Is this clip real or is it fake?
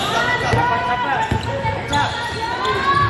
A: real